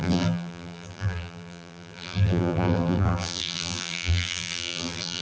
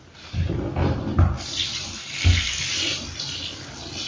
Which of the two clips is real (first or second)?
second